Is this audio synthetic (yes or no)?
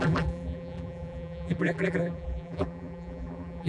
yes